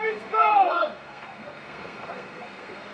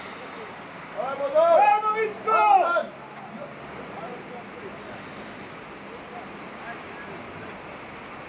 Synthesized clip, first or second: first